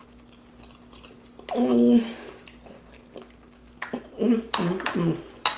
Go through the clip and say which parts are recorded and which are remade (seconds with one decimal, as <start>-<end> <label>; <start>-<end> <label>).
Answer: 0.0-5.6 recorded